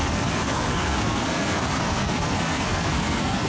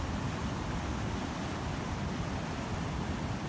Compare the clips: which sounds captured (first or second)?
second